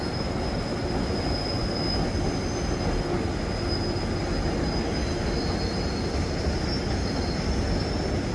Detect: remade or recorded recorded